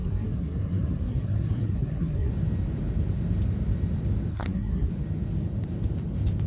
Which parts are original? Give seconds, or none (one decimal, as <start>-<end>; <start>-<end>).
2.3-4.3; 4.9-6.5